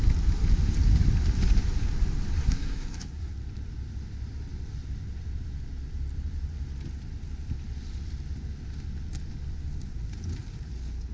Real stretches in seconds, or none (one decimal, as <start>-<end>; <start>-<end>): 0.0-2.4; 3.3-11.1